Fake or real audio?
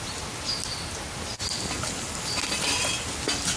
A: real